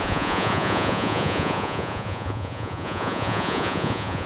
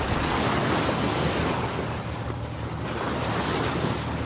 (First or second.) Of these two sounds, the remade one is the first